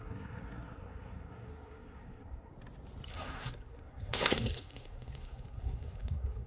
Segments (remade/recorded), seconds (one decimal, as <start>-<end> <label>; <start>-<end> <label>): 0.0-2.5 remade; 2.5-3.1 recorded; 3.1-6.5 remade